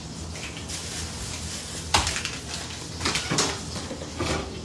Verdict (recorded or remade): recorded